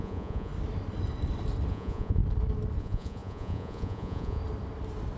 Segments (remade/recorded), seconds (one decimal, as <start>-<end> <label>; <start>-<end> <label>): 0.0-0.5 remade; 0.5-1.7 recorded; 1.7-2.2 remade; 2.2-2.8 recorded; 2.8-4.4 remade; 4.4-5.2 recorded